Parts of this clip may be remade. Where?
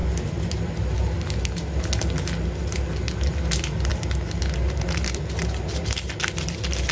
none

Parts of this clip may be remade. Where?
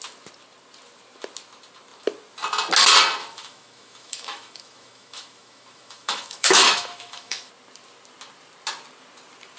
3.2-7.5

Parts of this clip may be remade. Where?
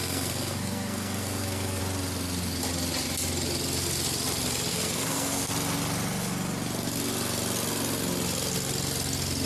0.0-1.8; 4.7-5.5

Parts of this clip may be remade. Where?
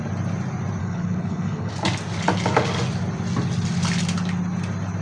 0.8-1.7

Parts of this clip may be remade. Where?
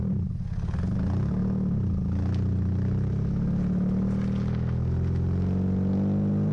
none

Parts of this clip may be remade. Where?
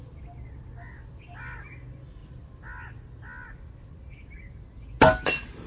none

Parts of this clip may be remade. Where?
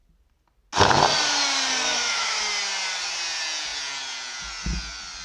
1.9-2.4